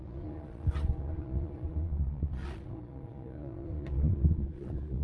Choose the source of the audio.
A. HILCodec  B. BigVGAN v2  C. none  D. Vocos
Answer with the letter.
D